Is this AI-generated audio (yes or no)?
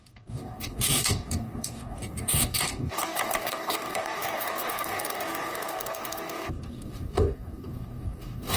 yes